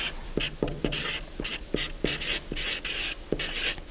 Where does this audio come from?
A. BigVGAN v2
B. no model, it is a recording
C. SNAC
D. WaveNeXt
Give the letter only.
B